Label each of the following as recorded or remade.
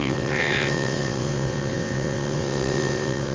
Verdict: remade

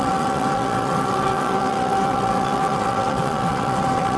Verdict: remade